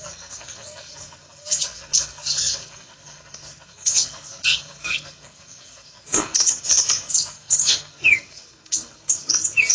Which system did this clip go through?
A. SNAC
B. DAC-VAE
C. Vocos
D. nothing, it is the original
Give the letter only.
A